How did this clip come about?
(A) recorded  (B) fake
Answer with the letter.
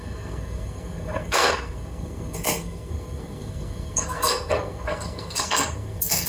B